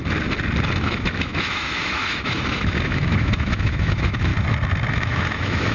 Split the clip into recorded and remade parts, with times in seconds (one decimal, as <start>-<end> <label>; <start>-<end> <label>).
0.0-0.8 recorded; 0.8-4.3 remade; 4.3-4.9 recorded; 4.9-5.7 remade